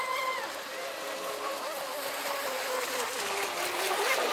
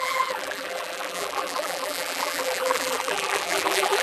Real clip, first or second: first